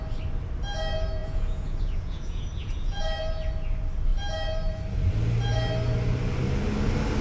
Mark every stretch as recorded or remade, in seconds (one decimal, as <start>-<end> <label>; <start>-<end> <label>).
0.0-1.2 recorded; 1.2-3.0 remade; 3.0-7.2 recorded